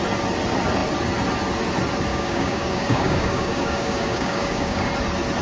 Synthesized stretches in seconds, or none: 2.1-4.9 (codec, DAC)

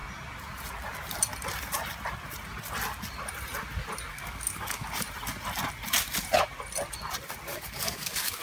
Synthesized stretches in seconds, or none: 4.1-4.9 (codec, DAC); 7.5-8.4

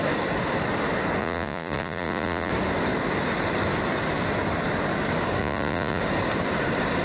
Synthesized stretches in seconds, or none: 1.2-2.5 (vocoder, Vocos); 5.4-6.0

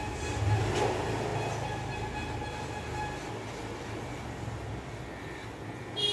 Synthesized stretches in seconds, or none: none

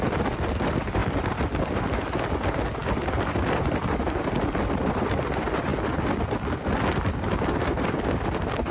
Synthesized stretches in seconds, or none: none